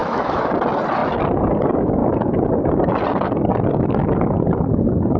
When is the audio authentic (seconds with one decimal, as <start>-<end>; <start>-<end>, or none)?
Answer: 0.5-5.2